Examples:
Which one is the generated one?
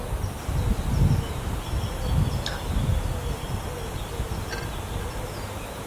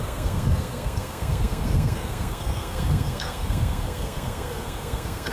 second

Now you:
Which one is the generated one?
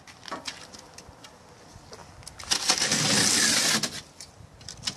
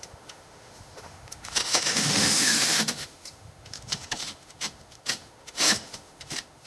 second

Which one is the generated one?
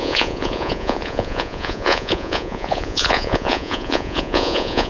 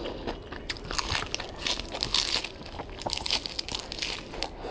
first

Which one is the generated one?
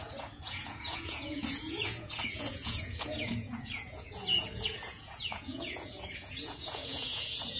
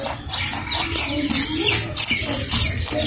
first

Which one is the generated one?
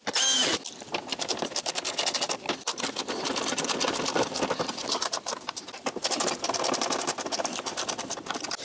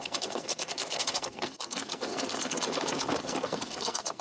second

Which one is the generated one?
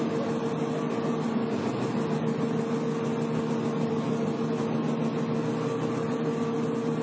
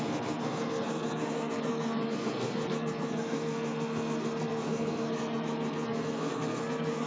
second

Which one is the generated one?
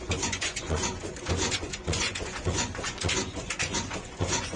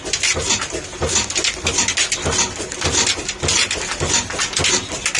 first